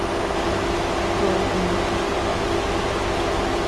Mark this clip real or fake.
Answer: real